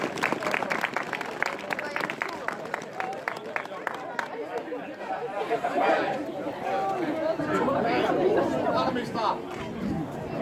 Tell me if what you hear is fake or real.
real